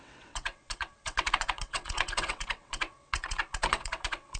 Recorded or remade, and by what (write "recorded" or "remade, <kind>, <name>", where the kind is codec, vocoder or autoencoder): remade, vocoder, WaveNeXt